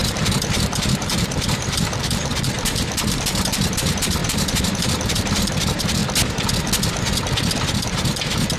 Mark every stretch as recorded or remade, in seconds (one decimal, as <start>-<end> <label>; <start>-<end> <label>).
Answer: 0.0-6.0 remade; 6.0-7.8 recorded; 7.8-8.6 remade